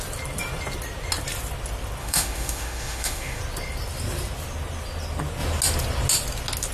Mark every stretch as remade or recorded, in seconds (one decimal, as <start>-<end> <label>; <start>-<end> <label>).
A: 0.0-2.0 recorded; 2.0-3.4 remade; 3.4-6.7 recorded